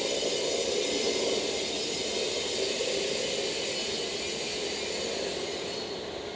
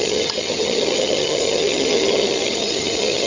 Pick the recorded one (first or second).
first